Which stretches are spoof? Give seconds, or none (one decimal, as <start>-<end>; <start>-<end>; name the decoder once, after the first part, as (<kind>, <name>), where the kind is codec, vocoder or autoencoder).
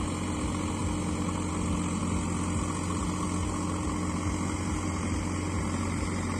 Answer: none